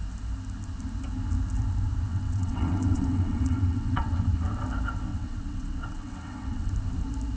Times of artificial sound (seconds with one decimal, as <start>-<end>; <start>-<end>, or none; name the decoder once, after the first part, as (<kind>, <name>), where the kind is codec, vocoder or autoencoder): 2.1-4.2 (vocoder, WaveNeXt); 5.1-6.7